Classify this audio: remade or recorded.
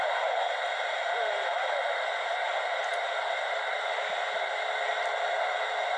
recorded